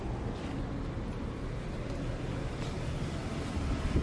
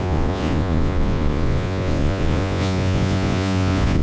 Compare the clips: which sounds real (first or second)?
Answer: first